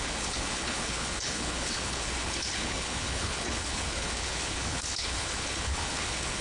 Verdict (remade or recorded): remade